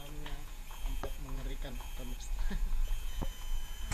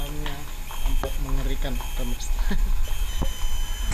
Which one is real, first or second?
second